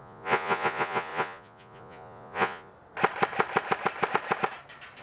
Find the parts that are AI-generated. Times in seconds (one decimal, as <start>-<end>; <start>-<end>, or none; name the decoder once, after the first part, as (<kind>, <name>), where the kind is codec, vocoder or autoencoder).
0.0-2.7 (vocoder, Vocos)